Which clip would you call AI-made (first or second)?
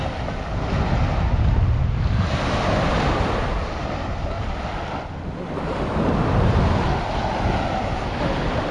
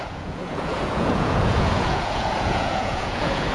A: second